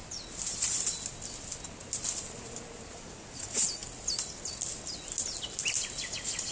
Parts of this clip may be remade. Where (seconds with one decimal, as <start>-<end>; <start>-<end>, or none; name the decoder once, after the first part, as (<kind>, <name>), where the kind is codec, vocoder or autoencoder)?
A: 2.9-3.8 (vocoder, Vocos); 6.1-6.5